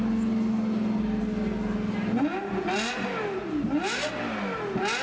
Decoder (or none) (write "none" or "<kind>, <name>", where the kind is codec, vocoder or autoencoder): none